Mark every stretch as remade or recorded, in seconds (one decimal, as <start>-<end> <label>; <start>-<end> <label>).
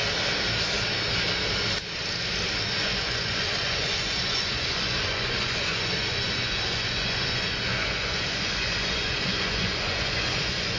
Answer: 0.0-2.8 recorded; 2.8-10.8 remade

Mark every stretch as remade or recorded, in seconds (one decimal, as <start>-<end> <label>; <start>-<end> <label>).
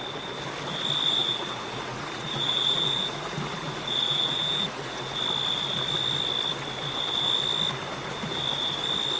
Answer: 0.0-1.2 recorded; 1.2-5.2 remade; 5.2-9.2 recorded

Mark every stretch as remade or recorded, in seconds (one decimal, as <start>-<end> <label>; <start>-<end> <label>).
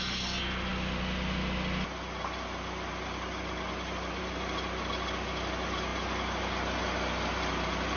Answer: 0.0-8.0 recorded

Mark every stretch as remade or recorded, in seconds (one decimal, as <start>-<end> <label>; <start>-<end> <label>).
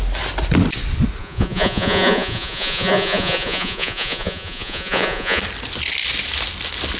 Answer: 0.0-1.2 recorded; 1.2-5.4 remade; 5.4-7.0 recorded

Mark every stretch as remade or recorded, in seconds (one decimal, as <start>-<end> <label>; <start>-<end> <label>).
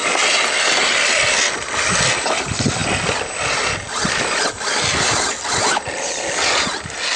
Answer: 0.0-7.2 recorded